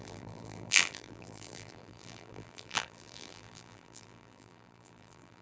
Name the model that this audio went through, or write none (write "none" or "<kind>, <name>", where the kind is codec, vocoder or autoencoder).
vocoder, BigVGAN v2